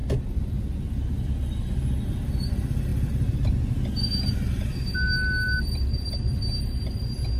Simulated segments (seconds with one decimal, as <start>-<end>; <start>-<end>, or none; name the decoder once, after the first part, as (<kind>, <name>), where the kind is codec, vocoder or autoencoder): none